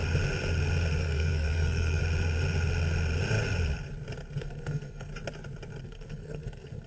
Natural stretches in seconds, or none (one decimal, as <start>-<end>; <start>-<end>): 0.0-1.0; 2.0-4.4; 5.1-5.8